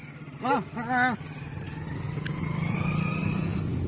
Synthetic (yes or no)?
no